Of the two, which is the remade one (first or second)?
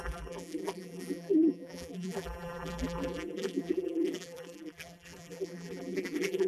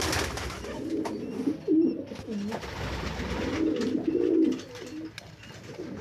first